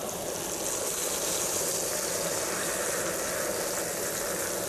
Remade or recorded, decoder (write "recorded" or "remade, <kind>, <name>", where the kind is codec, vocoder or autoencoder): recorded